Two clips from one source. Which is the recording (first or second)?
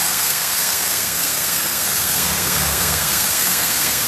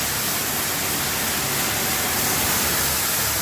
second